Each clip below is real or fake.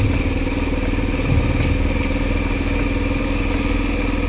real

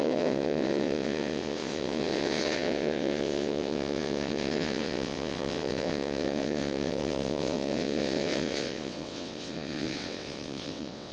fake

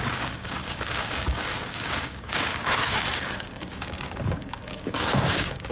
fake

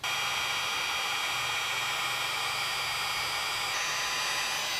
real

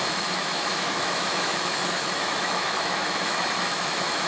fake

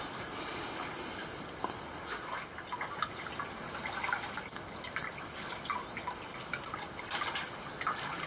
real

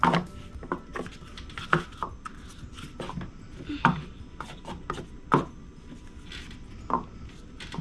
real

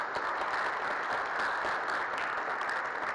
real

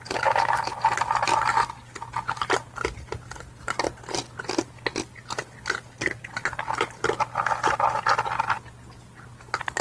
real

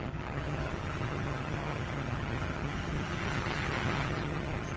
fake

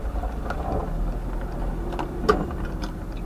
real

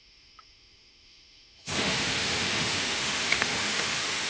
fake